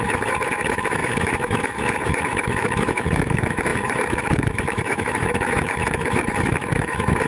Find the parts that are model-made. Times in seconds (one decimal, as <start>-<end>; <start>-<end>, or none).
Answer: 0.0-7.3